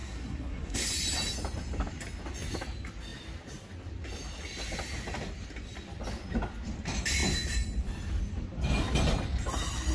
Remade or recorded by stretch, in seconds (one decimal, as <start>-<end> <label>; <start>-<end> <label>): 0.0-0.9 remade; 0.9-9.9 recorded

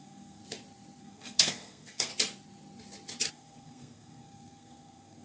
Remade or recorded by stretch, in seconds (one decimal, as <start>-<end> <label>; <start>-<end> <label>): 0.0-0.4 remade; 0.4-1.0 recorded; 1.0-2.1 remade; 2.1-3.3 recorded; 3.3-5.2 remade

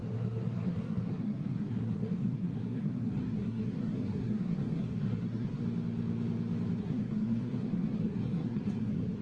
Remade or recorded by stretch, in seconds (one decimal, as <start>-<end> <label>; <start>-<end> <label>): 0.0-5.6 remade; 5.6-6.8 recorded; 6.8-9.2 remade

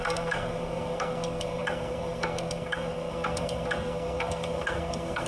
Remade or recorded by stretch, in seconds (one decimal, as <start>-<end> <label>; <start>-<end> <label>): 0.0-5.3 remade